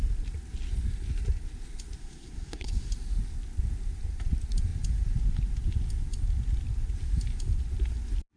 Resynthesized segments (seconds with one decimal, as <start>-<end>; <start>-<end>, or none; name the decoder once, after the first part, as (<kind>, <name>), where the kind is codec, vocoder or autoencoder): 2.0-2.9 (codec, SNAC)